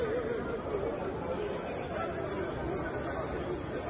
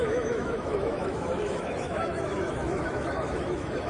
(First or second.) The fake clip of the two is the second